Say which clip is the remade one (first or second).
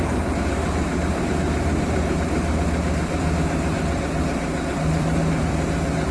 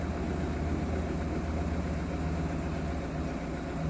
first